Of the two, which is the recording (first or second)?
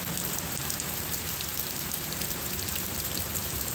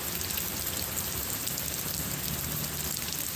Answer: second